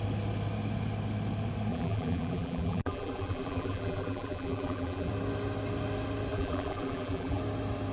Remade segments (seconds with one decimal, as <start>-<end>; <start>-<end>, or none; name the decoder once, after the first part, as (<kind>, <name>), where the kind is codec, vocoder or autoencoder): 1.7-5.1 (vocoder, BigVGAN v2); 6.3-7.4